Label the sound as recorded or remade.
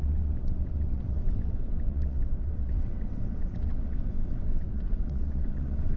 remade